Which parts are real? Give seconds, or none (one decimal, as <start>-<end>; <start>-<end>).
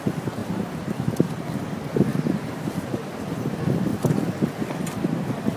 0.0-0.4; 1.1-2.1; 2.8-5.6